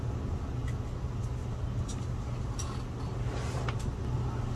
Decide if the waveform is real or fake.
real